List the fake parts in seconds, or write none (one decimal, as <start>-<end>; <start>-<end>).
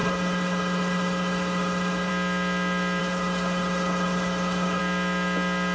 0.0-2.1; 3.0-4.8